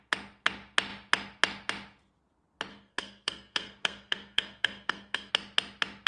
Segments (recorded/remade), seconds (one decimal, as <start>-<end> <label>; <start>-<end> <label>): 0.0-2.7 recorded; 2.7-5.3 remade; 5.3-6.1 recorded